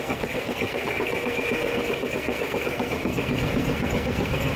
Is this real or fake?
fake